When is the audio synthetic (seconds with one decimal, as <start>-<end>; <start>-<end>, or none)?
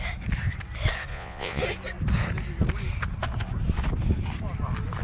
1.1-1.6